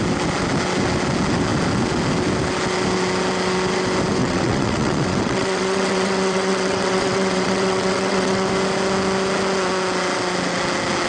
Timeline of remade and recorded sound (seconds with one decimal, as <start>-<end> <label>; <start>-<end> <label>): 0.0-4.2 recorded; 4.2-8.5 remade; 8.5-11.1 recorded